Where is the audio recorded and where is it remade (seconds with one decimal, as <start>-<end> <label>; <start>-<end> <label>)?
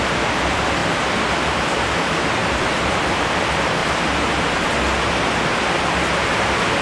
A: 0.0-6.8 recorded